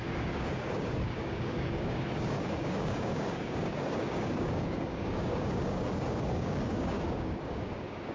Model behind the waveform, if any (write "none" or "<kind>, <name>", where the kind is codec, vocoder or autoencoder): codec, DAC